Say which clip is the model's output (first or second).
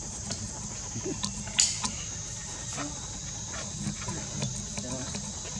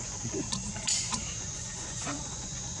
second